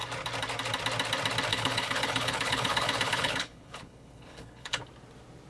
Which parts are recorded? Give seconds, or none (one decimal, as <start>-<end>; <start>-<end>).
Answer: 0.0-1.5; 4.8-5.5